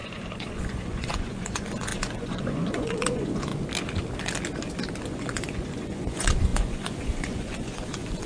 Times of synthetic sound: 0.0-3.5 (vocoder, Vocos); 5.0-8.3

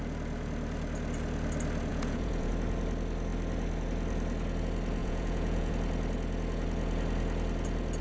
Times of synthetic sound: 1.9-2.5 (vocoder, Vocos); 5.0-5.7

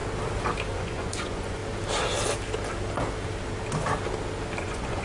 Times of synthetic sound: 0.7-1.6 (vocoder, Vocos); 4.6-5.0

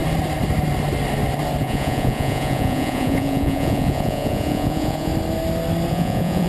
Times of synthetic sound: 1.6-5.1 (vocoder, Vocos); 5.9-6.5

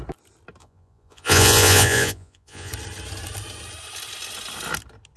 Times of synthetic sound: 0.6-2.7 (vocoder, Vocos)

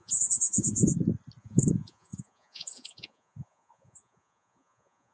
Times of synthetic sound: 0.0-0.9 (vocoder, Vocos); 1.4-5.1